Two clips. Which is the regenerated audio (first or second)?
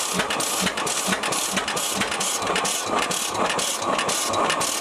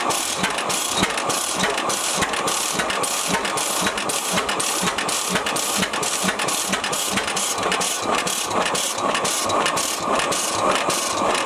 second